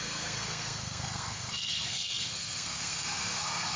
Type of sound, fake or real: fake